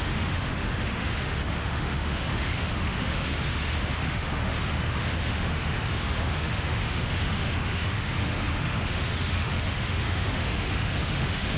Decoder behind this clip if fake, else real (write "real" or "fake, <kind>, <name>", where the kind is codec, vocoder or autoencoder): fake, autoencoder, DAC-VAE